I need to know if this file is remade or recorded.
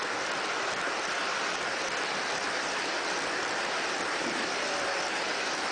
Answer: remade